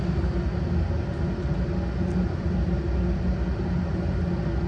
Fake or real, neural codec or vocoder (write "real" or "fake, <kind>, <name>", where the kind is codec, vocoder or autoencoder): real